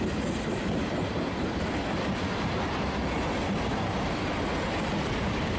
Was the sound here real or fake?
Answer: real